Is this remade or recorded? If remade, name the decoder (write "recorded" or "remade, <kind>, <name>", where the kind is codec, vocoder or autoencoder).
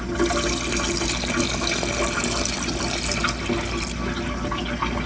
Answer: recorded